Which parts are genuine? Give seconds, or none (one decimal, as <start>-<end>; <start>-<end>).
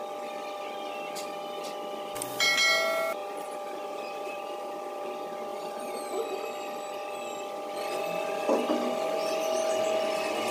0.0-3.2; 5.1-5.5; 6.1-10.5